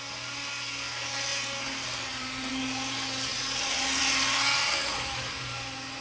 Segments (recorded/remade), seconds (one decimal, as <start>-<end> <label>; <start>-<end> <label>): 0.0-6.0 recorded